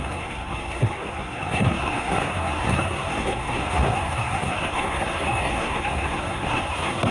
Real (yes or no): no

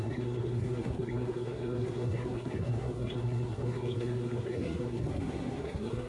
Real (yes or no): no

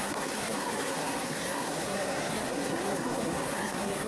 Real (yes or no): no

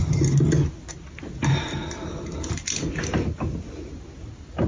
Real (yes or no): yes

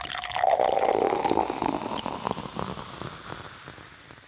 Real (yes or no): yes